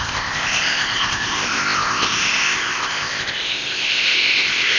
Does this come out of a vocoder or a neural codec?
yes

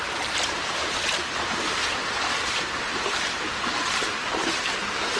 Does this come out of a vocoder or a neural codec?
yes